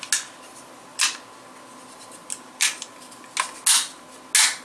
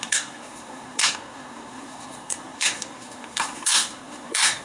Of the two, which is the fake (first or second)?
second